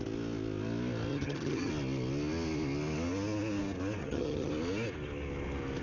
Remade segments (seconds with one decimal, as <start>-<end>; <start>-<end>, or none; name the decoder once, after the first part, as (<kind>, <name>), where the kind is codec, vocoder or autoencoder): 1.1-1.7 (vocoder, HiFi-GAN); 4.0-4.5